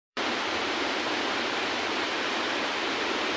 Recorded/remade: remade